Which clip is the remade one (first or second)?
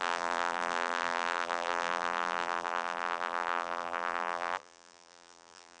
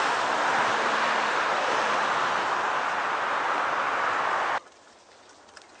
first